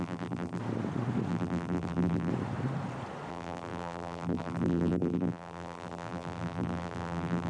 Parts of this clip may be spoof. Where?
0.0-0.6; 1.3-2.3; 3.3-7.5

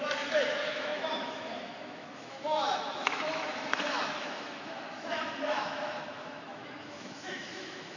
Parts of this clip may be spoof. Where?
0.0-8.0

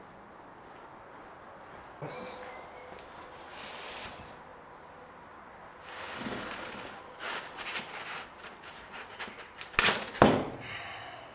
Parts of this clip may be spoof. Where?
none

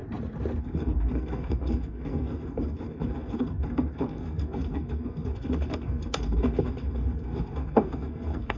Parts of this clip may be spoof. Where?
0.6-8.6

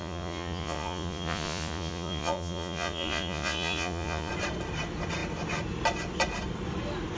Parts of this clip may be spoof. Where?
0.0-4.3

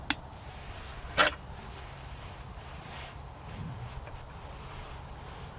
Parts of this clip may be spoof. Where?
none

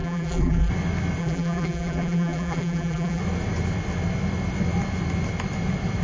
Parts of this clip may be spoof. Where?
0.0-0.7; 1.2-3.2